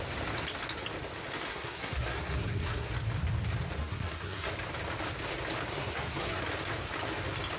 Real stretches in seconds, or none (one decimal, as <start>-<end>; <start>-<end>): 0.0-1.5; 2.9-3.8; 4.5-5.7; 6.4-7.6